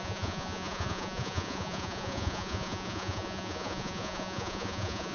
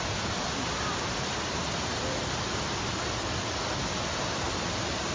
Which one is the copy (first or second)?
first